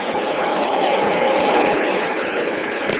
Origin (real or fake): fake